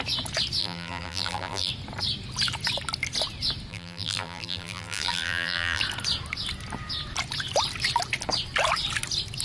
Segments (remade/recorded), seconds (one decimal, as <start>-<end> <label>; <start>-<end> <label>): 0.0-0.6 recorded; 0.6-1.7 remade; 1.7-3.7 recorded; 3.7-5.8 remade; 5.8-9.4 recorded